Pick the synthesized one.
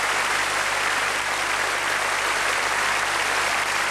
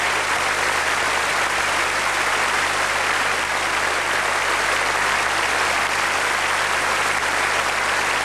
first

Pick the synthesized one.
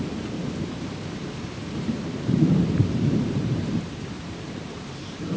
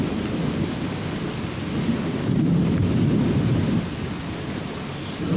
first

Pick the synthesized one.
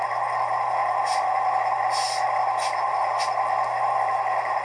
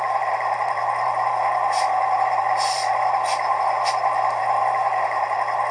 second